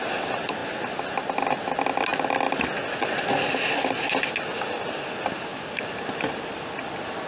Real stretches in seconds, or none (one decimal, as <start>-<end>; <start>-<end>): 0.0-7.3